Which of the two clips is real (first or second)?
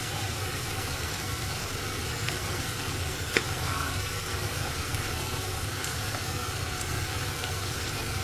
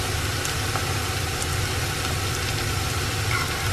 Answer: second